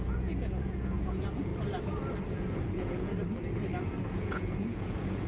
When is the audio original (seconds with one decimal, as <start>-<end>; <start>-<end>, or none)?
1.5-2.3; 3.1-4.1